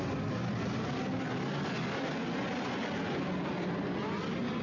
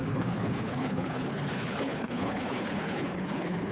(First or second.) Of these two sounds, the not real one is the second